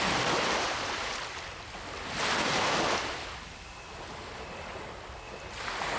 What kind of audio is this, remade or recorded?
recorded